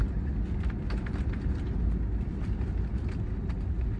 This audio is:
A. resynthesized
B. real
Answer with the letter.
B